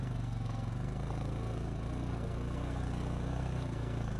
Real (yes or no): no